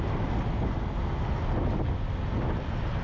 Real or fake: real